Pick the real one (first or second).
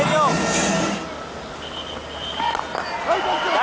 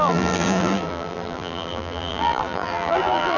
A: first